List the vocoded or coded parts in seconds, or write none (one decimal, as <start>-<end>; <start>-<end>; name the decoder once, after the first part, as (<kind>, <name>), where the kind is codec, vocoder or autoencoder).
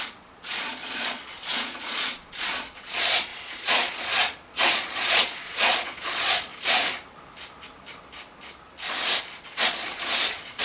0.0-6.5 (vocoder, Vocos); 9.2-10.6